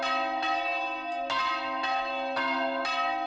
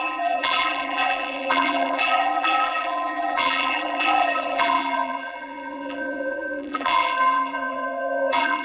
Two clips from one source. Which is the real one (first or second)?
first